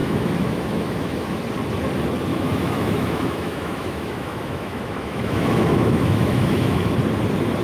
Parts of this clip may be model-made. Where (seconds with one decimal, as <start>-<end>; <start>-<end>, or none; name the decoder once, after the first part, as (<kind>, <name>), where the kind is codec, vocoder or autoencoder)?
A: 0.0-1.4 (autoencoder, DAC-VAE); 2.3-6.9